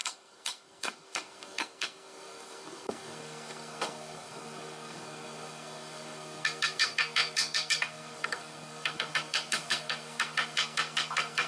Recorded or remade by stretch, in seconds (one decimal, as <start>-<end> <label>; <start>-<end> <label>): 0.0-11.5 remade